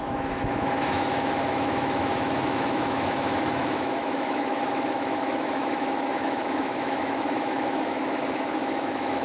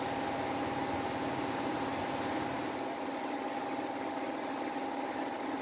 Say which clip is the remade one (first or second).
first